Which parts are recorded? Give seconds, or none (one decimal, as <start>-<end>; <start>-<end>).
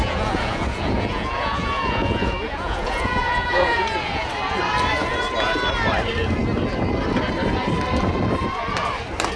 4.3-9.4